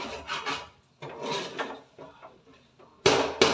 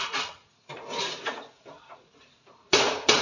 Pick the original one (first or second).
first